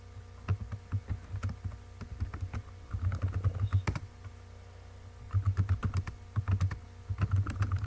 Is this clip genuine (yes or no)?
yes